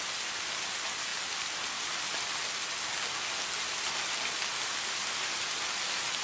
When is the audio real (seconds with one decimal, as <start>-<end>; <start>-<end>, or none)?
0.0-6.2

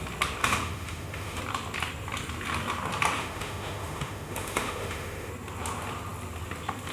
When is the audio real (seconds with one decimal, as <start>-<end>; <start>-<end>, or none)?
0.0-0.4; 1.4-3.2; 5.3-6.9

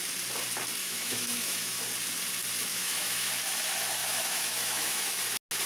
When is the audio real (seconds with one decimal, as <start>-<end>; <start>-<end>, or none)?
0.0-0.8; 1.8-2.7; 3.3-4.0; 5.2-5.7

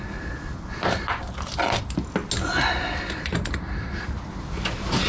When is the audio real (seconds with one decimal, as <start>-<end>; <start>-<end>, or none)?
0.0-5.1

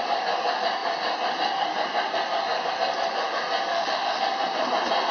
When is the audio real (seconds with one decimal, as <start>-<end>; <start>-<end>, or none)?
0.0-3.7; 4.2-5.1